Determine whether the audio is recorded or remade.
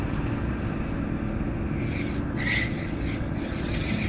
recorded